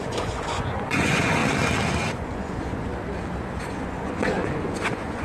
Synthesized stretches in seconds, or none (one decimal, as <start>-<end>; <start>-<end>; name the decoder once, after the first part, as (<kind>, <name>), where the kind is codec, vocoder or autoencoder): 0.0-1.4 (vocoder, Vocos); 2.1-2.9; 3.6-5.2

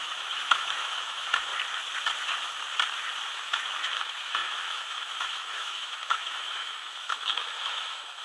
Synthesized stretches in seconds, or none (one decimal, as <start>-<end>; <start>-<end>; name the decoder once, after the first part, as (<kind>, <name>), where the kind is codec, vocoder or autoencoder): 0.0-1.5 (autoencoder, DAC-VAE); 3.2-8.2

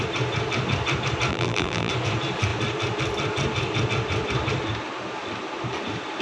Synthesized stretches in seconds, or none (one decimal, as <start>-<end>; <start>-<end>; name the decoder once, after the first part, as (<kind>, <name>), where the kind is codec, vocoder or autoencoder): 1.3-1.9 (vocoder, BigVGAN v2)

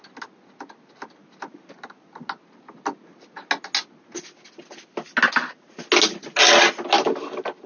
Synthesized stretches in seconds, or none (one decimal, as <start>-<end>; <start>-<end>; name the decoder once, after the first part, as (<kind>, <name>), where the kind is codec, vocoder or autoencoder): none

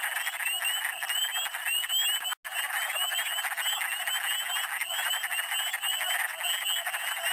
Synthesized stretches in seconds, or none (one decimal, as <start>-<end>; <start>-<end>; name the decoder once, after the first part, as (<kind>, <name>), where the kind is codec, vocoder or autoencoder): none

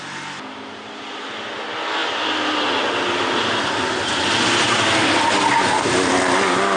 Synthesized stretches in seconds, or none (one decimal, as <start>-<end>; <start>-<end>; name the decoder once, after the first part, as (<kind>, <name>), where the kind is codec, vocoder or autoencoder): none

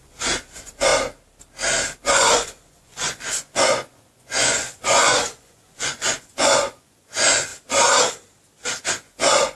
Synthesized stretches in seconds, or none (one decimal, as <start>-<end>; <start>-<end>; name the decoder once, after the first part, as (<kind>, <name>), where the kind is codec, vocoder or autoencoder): 0.0-0.9 (vocoder, Vocos); 2.0-7.5; 8.9-9.5

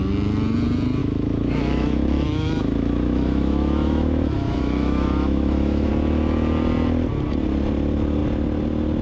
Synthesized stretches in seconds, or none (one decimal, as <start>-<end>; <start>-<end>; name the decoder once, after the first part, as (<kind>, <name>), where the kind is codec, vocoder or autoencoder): 1.0-5.9 (autoencoder, DAC-VAE)